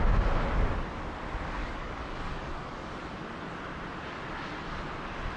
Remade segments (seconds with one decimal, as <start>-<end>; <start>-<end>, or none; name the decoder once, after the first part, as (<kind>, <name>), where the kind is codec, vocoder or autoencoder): 1.6-2.9 (codec, DAC)